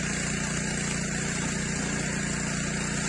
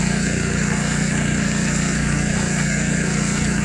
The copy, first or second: second